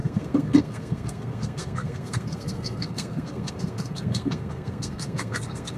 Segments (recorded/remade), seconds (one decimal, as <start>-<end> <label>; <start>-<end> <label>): 0.0-5.8 remade